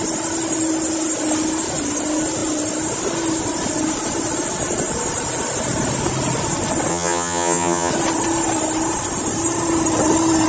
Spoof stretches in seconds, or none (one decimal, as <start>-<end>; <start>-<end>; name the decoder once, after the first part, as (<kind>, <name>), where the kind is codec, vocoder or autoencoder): 6.9-7.9 (vocoder, HiFi-GAN)